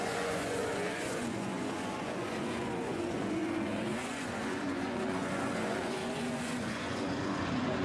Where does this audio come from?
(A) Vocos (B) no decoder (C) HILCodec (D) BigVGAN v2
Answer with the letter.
A